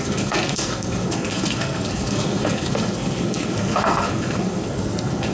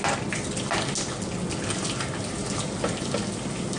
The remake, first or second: first